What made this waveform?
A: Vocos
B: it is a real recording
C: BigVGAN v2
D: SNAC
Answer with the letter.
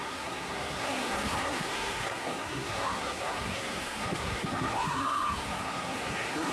D